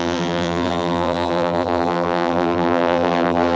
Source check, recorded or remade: remade